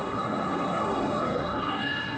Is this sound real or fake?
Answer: fake